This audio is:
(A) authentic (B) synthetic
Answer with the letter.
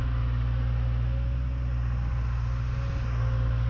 A